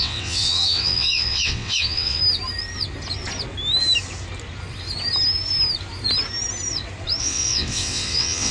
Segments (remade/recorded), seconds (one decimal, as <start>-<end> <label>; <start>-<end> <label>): 0.0-2.2 remade; 2.2-7.2 recorded; 7.2-8.5 remade